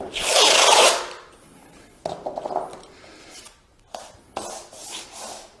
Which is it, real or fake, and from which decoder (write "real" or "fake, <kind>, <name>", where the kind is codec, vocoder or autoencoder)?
real